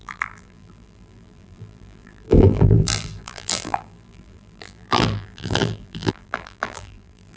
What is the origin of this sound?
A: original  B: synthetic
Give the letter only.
B